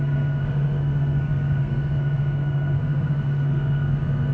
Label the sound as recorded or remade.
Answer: remade